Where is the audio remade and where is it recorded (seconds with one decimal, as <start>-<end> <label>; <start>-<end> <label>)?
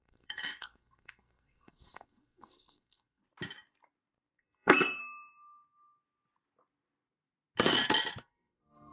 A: 0.0-3.2 remade; 3.2-4.4 recorded; 4.4-5.0 remade; 5.0-8.2 recorded; 8.2-8.9 remade